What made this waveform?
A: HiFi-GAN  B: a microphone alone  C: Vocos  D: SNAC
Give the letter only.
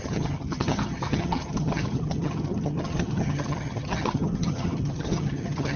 A